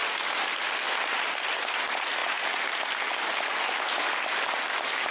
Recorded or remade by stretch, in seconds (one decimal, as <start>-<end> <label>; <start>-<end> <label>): 0.0-5.1 recorded